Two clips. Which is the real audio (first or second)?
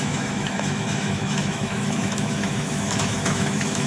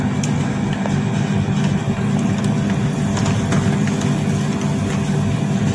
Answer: second